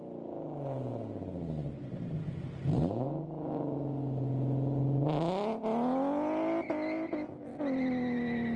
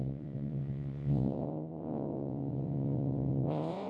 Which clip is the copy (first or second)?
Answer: second